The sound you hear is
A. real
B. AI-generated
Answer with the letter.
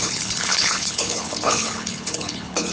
B